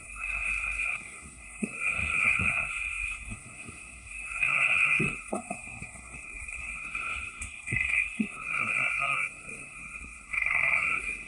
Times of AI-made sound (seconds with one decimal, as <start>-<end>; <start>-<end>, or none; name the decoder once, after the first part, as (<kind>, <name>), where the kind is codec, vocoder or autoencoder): 0.0-11.3 (codec, SNAC)